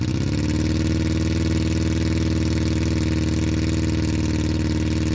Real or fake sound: real